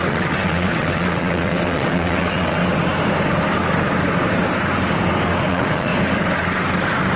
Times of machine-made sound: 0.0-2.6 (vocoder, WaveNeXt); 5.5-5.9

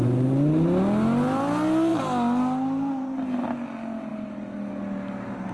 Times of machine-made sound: none

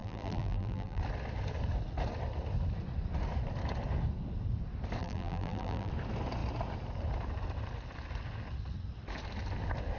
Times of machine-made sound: 0.0-1.0 (vocoder, BigVGAN v2); 5.0-5.9

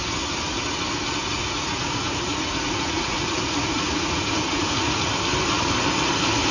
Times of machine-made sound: 1.2-5.1 (vocoder, Vocos)

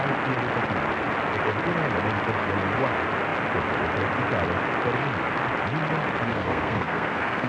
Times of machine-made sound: 6.3-7.5 (codec, SNAC)

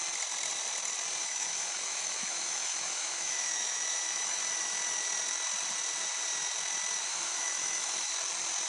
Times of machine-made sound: 1.2-4.4 (autoencoder, DAC-VAE); 7.0-8.1

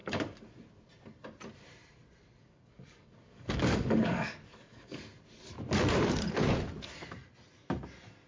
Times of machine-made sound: 0.0-0.6 (codec, DAC); 2.4-5.0